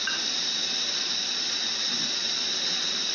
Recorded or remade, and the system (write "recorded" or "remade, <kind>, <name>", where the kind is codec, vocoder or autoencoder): recorded